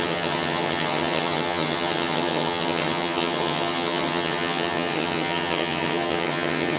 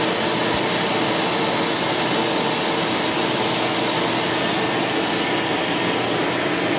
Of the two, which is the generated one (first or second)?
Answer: first